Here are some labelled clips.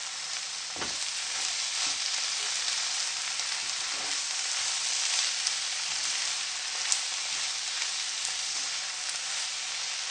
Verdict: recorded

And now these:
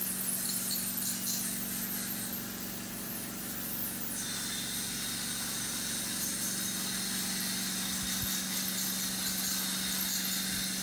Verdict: recorded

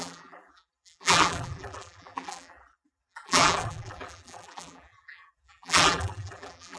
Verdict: remade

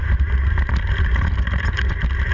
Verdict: remade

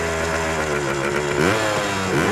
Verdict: recorded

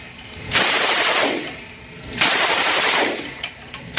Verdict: remade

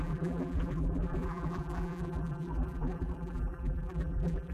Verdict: remade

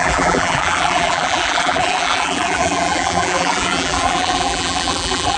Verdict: remade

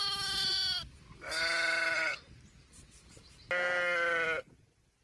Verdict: recorded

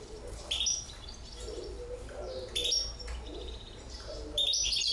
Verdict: remade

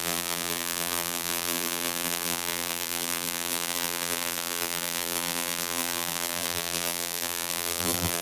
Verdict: remade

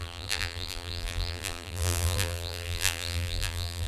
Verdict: remade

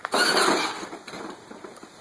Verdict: remade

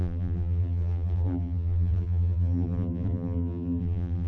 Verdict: remade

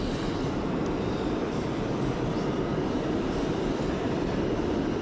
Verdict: remade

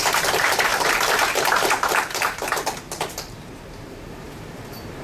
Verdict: remade